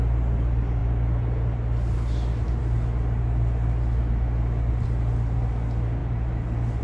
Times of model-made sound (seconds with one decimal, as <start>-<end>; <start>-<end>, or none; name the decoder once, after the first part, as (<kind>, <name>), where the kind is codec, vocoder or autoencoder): none

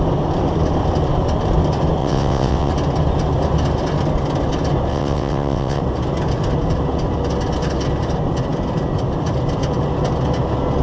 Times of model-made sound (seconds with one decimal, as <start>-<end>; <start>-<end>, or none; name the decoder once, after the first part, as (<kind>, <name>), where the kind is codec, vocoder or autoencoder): 2.0-2.7 (vocoder, WaveNeXt); 4.9-5.8

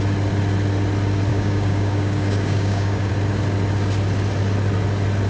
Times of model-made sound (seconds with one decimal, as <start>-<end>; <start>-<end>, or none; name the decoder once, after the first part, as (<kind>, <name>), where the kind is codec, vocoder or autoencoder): 1.3-3.1 (codec, DAC)

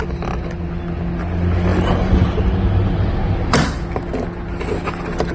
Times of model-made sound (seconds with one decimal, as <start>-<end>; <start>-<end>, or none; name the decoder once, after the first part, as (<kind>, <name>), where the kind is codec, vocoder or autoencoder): none

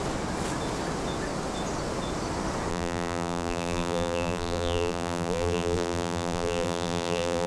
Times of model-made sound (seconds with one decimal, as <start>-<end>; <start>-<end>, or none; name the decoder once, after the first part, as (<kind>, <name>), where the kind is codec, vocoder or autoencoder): 2.7-7.5 (vocoder, BigVGAN v2)

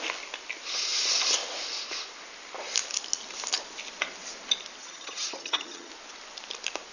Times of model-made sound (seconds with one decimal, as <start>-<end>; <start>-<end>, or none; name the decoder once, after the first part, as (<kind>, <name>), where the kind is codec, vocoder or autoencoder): 4.8-5.9 (vocoder, HiFi-GAN)

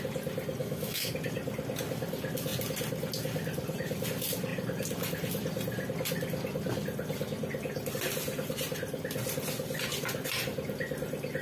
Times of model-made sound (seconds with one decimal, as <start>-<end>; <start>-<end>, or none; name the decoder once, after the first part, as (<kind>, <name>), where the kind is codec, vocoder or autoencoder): 0.6-1.1 (autoencoder, DAC-VAE)